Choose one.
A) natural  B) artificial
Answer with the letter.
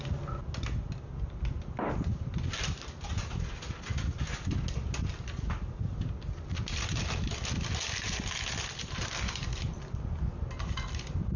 A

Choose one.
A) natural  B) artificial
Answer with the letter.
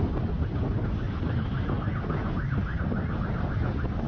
A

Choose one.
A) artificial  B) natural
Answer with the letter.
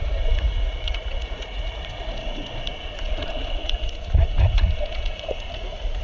A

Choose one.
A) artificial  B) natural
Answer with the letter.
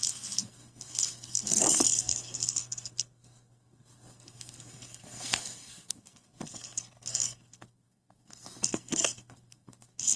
A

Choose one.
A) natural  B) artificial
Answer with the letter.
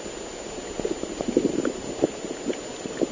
A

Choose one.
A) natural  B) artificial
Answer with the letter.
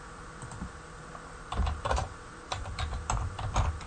A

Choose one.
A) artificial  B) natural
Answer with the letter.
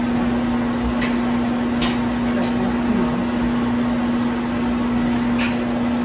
B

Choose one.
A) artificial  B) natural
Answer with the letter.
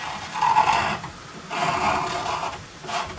B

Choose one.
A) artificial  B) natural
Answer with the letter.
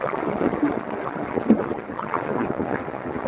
A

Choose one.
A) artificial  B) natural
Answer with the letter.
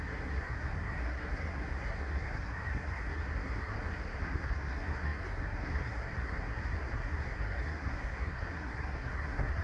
A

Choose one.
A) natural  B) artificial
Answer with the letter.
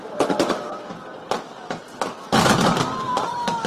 A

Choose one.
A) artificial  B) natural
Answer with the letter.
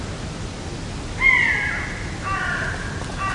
B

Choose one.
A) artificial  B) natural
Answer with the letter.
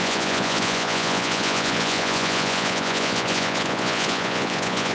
A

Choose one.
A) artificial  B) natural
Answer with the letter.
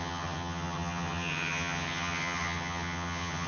A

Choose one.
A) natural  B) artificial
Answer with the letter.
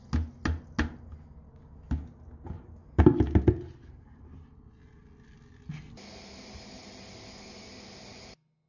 A